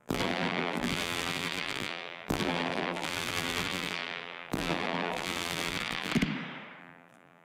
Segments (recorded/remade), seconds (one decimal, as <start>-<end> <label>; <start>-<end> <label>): 0.0-6.1 remade; 6.1-6.8 recorded; 6.8-7.4 remade